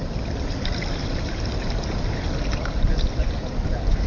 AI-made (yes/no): no